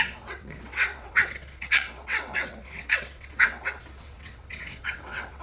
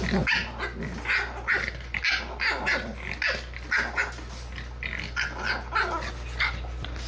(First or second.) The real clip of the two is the second